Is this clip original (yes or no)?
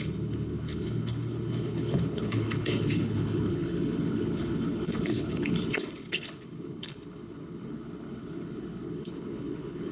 no